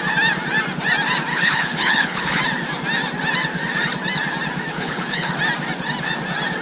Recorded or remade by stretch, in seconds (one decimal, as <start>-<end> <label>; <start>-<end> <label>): 0.0-1.3 recorded; 1.3-2.4 remade; 2.4-4.7 recorded; 4.7-5.3 remade; 5.3-6.6 recorded